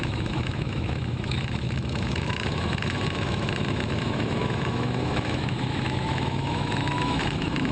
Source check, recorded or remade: remade